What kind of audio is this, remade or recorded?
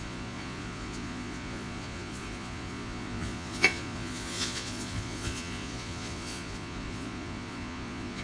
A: remade